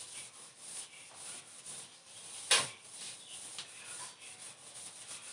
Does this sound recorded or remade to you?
recorded